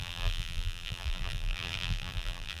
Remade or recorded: remade